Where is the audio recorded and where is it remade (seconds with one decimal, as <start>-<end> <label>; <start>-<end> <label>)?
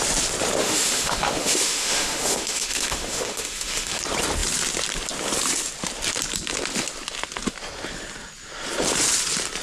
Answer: 0.0-0.6 recorded; 0.6-4.0 remade; 4.0-9.6 recorded